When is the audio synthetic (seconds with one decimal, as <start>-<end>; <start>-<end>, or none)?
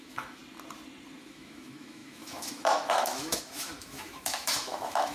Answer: 0.0-0.4; 1.2-5.1